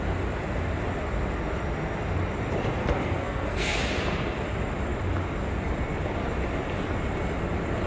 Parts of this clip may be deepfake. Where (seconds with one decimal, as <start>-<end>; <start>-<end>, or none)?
2.8-3.8